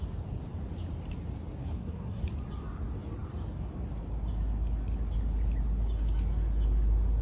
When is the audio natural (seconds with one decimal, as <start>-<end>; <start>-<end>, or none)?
0.0-1.6; 2.2-7.2